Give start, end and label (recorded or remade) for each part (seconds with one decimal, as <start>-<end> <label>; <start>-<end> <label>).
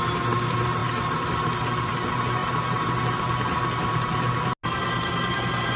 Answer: 0.0-5.8 recorded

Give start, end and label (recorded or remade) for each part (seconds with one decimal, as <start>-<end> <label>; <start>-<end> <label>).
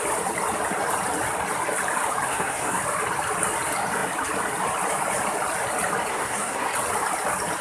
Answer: 0.0-2.3 recorded; 2.3-2.8 remade; 2.8-6.1 recorded; 6.1-6.7 remade; 6.7-7.6 recorded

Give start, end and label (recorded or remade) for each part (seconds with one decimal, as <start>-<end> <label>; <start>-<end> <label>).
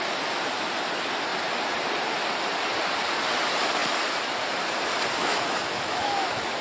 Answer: 0.0-5.2 recorded; 5.2-6.6 remade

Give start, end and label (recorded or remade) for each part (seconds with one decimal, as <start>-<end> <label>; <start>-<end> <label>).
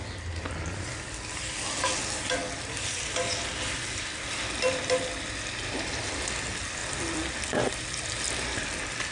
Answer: 0.0-9.1 recorded